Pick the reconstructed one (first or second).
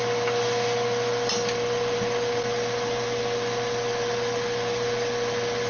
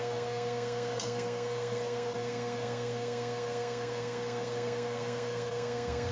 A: second